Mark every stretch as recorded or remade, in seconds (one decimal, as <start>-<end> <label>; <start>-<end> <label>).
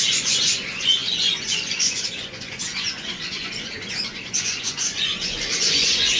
0.0-6.2 remade